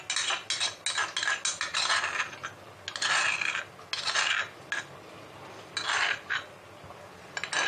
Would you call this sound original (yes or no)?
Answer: yes